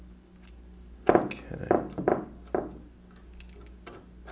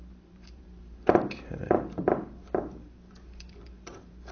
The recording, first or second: first